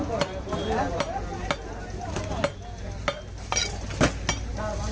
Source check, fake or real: real